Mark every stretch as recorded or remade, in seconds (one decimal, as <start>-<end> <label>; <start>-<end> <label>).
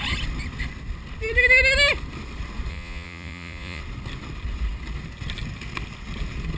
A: 0.0-2.7 recorded; 2.7-3.8 remade; 3.8-6.6 recorded